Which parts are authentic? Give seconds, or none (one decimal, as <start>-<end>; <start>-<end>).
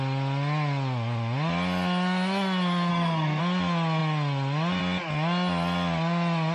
0.0-2.9; 3.4-6.5